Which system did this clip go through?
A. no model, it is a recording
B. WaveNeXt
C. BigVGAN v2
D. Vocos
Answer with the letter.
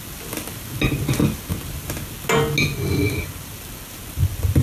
A